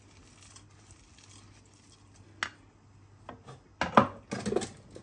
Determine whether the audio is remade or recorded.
recorded